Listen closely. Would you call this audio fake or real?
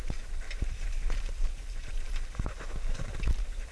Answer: fake